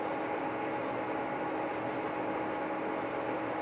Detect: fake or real real